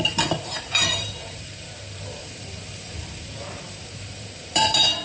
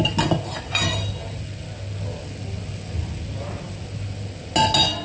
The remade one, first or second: first